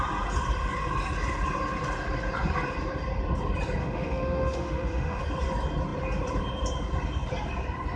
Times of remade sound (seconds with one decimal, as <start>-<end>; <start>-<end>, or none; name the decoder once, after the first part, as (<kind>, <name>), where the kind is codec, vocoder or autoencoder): 3.8-5.2 (autoencoder, DAC-VAE)